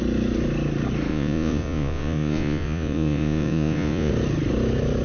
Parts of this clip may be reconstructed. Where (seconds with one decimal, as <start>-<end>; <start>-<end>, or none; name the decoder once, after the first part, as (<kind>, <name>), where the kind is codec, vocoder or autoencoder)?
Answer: 1.1-4.1 (vocoder, Vocos)